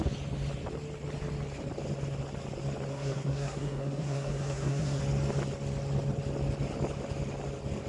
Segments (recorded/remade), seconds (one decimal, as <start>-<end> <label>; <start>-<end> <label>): 0.0-2.9 recorded; 2.9-5.0 remade; 5.0-7.9 recorded